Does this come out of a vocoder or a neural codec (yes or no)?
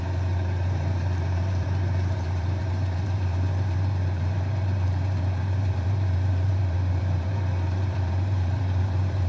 yes